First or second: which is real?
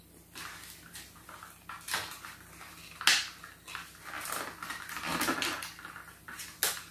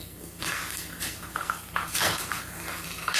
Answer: first